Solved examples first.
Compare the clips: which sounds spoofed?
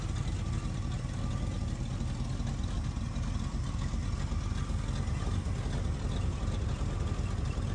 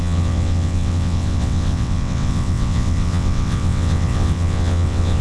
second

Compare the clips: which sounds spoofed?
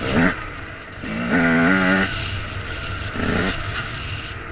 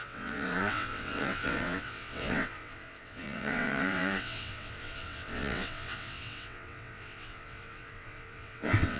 second